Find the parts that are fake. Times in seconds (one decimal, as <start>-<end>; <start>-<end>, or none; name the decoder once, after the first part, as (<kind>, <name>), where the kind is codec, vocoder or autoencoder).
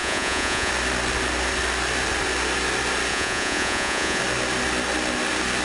0.0-0.7 (vocoder, Vocos); 3.1-4.2